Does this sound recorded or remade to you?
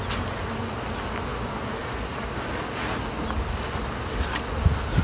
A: recorded